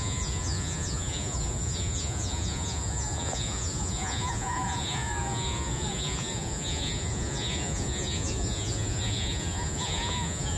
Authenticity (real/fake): fake